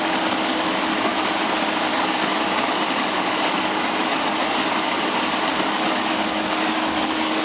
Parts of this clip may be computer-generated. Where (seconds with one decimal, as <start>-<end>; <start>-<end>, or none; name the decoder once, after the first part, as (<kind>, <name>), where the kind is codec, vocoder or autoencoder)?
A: 0.0-1.1 (codec, DAC); 1.9-7.4